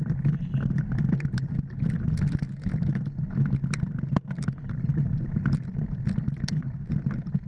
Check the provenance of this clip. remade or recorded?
recorded